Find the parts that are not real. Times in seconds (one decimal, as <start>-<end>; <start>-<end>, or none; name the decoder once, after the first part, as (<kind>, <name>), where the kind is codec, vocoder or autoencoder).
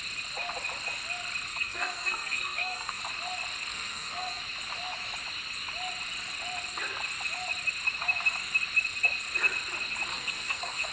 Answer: 1.5-3.0 (codec, SNAC); 3.7-4.4; 10.1-10.9